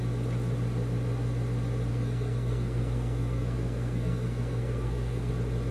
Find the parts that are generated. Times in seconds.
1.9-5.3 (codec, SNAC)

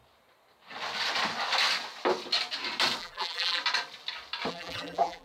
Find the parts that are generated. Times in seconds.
3.0-3.6 (vocoder, BigVGAN v2); 4.5-5.2

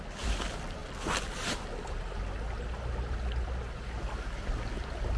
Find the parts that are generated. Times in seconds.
none

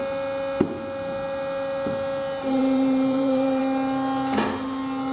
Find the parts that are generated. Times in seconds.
2.6-3.6 (vocoder, BigVGAN v2)